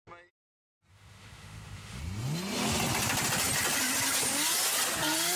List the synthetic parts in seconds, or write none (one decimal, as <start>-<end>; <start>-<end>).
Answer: 0.9-2.0